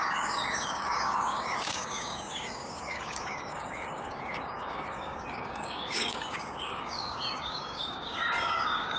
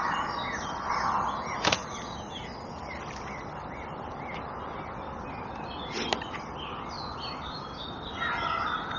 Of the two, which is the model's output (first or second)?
first